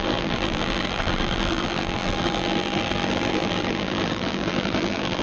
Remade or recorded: remade